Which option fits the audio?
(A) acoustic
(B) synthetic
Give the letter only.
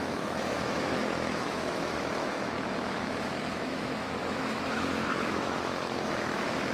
B